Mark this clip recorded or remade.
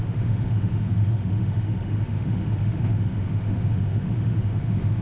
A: remade